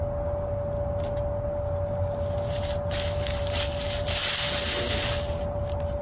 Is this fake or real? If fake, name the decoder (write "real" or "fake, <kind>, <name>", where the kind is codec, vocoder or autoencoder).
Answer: real